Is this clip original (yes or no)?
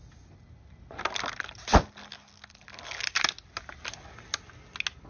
yes